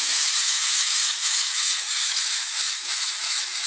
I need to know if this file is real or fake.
fake